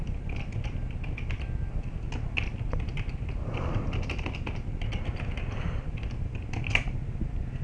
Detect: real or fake real